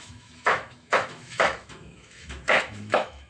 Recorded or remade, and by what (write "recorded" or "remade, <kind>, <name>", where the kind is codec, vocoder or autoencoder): remade, autoencoder, DAC-VAE